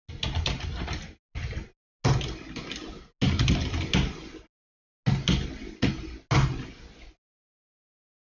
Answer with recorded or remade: recorded